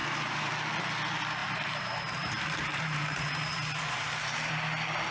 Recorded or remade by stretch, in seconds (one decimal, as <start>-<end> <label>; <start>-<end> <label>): 0.0-0.5 remade; 0.5-1.4 recorded; 1.4-4.5 remade; 4.5-5.1 recorded